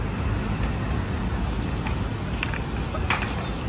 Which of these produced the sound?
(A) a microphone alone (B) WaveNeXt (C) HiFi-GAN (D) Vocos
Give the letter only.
A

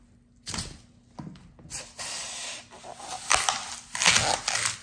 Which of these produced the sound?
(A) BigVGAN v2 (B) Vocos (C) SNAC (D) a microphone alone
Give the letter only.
D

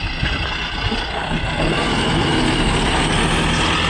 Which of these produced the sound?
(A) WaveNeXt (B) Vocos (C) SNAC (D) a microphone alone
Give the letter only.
D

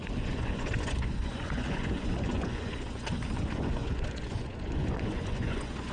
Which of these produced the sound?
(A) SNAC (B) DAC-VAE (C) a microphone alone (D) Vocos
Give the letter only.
D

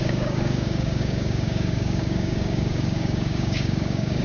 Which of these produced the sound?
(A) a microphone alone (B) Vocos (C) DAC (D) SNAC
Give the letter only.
C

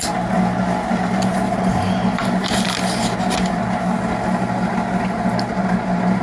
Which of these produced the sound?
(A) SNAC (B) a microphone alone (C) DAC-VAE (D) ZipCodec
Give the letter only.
B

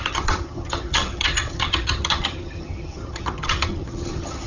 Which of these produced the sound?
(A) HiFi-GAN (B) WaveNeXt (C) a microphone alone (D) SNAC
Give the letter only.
A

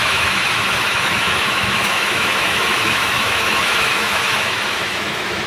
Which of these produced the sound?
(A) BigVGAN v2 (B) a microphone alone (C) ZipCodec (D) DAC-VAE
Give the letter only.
D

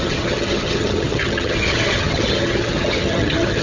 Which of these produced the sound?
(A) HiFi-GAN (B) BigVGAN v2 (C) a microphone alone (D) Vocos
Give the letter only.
A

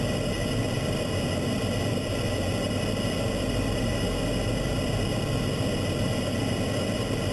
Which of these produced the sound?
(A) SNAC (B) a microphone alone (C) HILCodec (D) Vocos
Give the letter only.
B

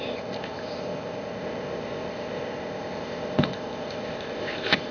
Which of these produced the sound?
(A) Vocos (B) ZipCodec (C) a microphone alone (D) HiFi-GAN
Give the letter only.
B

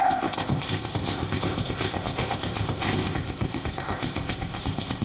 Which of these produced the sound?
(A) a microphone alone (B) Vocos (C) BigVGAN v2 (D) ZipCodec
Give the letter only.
D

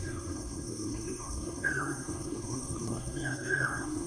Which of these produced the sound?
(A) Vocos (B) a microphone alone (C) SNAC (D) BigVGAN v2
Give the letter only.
C